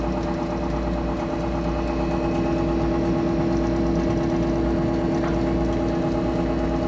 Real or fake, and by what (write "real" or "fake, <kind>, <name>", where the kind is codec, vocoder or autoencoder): real